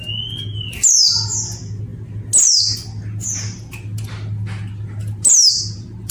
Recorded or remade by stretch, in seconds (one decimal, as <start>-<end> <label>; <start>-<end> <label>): 0.0-6.1 recorded